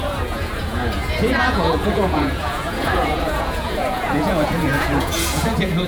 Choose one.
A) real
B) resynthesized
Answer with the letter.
B